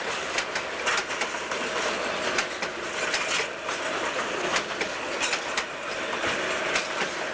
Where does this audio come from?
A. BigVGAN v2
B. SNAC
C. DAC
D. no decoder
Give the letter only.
D